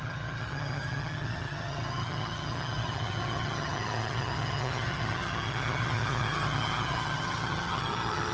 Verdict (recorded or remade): remade